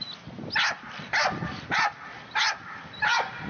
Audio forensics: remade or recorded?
recorded